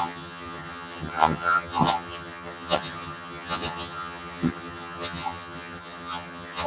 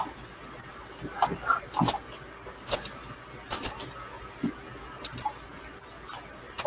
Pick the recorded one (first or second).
second